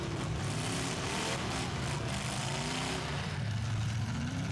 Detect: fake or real fake